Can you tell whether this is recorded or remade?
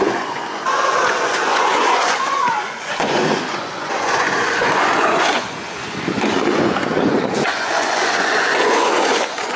remade